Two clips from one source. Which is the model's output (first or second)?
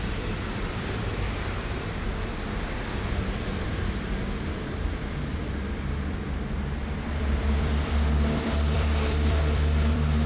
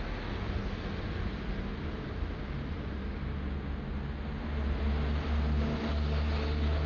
first